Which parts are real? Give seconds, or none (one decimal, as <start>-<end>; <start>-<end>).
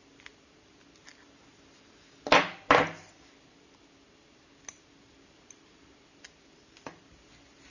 0.0-7.7